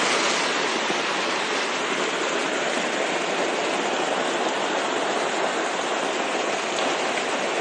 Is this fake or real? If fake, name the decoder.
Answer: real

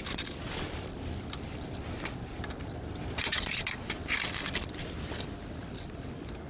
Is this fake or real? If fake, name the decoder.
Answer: fake, vocoder, BigVGAN v2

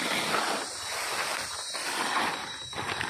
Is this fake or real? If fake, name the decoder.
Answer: real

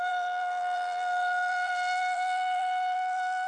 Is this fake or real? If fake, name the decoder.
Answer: fake, vocoder, BigVGAN v2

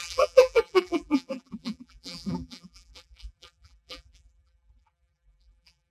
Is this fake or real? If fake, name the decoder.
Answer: fake, vocoder, BigVGAN v2